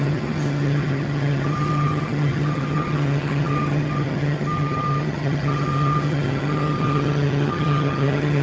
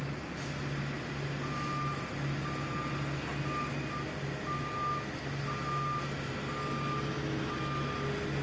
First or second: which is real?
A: second